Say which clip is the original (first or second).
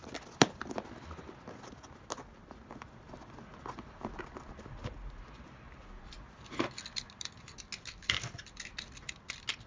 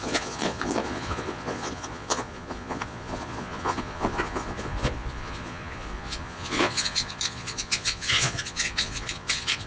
first